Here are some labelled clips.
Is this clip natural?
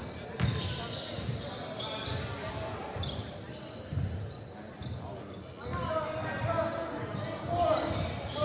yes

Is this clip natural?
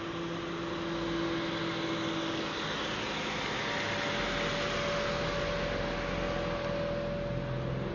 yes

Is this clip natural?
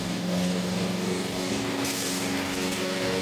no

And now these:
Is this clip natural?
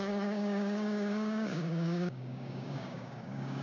no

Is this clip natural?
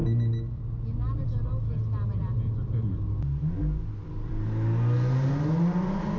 yes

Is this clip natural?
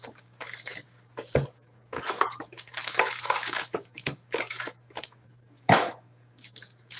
no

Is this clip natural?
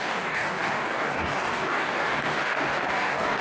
no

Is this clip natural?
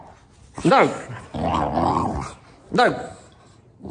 yes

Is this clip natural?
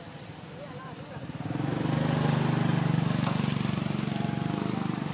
yes